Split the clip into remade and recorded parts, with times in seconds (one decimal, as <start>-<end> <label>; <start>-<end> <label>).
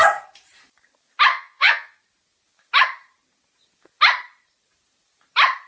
0.0-1.3 recorded; 1.3-2.0 remade; 2.0-5.7 recorded